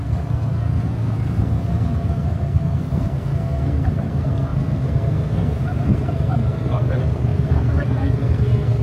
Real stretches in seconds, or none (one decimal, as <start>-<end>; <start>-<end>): none